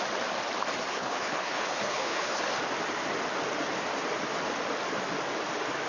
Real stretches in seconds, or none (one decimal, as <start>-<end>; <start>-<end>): 0.0-0.9; 2.4-5.9